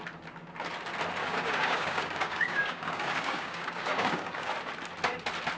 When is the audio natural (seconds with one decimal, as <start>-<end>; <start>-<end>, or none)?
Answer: 0.0-1.2; 4.5-5.6